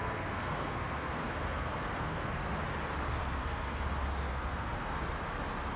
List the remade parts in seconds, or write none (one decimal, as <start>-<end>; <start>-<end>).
0.0-2.6; 3.2-3.8; 4.3-5.1